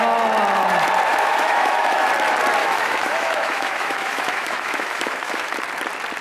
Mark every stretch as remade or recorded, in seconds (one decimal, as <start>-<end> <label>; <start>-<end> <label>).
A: 0.0-1.1 recorded; 1.1-2.1 remade; 2.1-2.6 recorded; 2.6-5.5 remade; 5.5-6.2 recorded